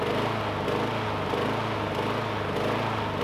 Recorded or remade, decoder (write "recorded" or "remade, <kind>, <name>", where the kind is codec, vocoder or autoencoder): recorded